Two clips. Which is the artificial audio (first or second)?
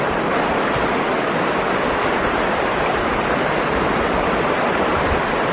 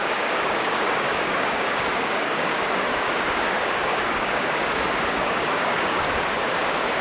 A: second